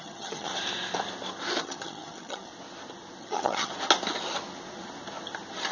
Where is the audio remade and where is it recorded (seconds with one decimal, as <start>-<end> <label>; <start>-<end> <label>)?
0.0-0.5 remade; 0.5-1.6 recorded; 1.6-2.5 remade; 2.5-3.2 recorded; 3.2-3.7 remade; 3.7-5.7 recorded